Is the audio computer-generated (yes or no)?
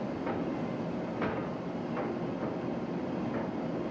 no